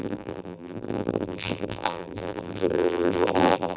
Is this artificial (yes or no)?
yes